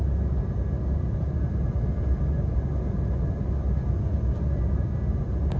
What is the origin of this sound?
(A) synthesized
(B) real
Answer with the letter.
B